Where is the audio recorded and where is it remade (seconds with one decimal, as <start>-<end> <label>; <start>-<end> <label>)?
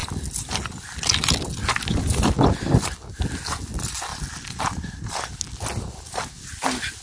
0.0-4.1 recorded; 4.1-5.3 remade; 5.3-7.0 recorded